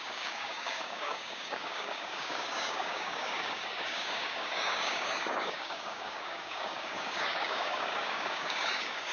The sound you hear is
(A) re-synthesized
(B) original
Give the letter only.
A